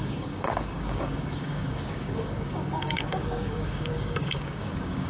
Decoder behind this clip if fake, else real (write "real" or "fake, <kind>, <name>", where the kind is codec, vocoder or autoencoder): fake, codec, DAC